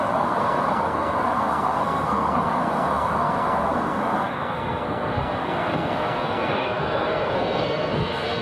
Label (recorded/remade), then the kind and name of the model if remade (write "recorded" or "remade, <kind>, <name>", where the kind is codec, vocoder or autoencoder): remade, codec, SNAC